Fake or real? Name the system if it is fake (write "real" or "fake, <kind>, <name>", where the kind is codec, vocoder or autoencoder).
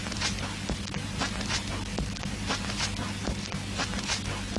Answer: real